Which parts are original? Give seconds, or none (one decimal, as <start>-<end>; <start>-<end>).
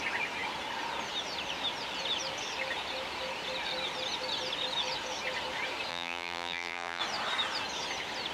0.0-5.9; 7.0-8.3